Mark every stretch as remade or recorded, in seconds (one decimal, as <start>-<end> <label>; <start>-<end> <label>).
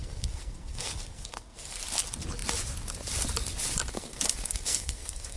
0.0-1.8 remade; 1.8-4.0 recorded; 4.0-5.4 remade